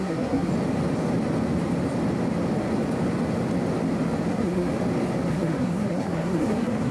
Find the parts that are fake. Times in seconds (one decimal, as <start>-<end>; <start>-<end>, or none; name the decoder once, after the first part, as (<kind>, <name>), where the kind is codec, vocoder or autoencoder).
0.0-0.5 (codec, SNAC); 4.3-4.7; 5.3-6.9